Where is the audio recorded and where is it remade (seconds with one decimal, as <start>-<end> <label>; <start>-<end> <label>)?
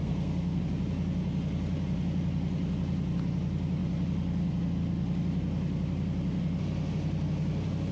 0.0-0.6 remade; 0.6-7.9 recorded